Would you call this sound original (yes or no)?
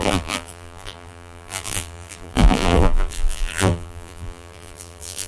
no